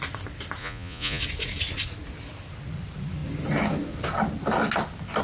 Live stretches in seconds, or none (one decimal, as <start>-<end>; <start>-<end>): 0.0-0.6; 1.2-5.2